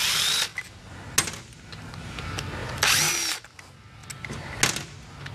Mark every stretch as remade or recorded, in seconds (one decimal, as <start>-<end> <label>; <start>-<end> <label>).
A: 0.0-5.3 recorded